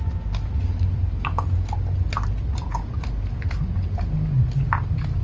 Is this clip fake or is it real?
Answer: real